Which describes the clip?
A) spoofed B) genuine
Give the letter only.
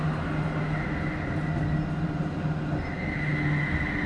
B